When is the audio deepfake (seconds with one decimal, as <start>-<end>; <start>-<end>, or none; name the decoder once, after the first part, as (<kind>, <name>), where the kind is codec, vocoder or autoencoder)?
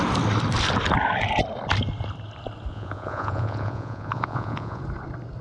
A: 2.7-4.8 (vocoder, Vocos)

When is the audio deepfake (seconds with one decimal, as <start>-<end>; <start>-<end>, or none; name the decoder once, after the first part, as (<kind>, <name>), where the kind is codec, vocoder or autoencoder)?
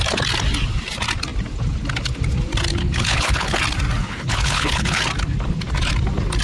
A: 2.7-3.6 (codec, HILCodec); 4.0-5.0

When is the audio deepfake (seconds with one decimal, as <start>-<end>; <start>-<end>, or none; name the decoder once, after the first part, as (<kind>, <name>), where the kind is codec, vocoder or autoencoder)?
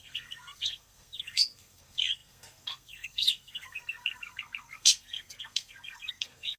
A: 0.0-6.6 (codec, SNAC)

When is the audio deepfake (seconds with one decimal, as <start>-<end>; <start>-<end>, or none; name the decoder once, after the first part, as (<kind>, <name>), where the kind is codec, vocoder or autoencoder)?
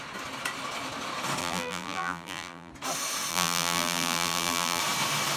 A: 1.4-2.7 (vocoder, BigVGAN v2); 3.3-4.8